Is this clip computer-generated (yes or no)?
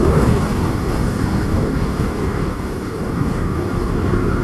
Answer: yes